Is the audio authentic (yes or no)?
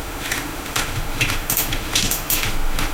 no